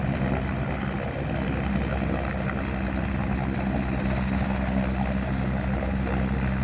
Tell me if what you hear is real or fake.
real